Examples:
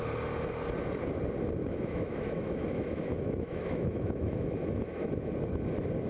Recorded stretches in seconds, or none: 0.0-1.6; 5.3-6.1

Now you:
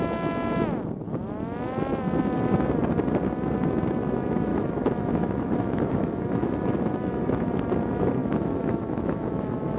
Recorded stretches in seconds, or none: 0.0-4.5; 7.5-8.2

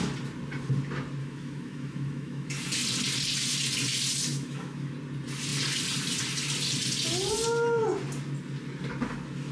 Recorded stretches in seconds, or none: 0.0-1.2; 2.5-4.3; 4.9-9.5

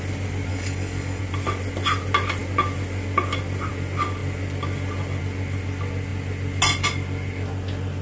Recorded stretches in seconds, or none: 0.0-0.5; 1.2-8.0

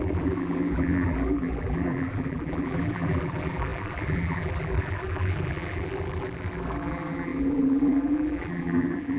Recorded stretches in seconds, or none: none

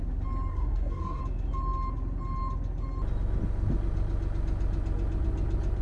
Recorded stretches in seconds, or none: 0.0-0.5; 1.2-5.8

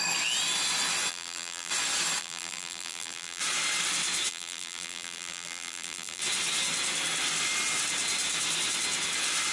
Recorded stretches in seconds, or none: 0.0-1.1; 1.7-2.2; 3.4-4.3; 6.2-9.5

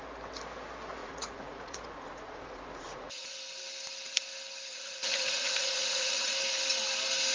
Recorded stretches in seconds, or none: 0.0-1.0; 3.3-4.7; 6.3-7.3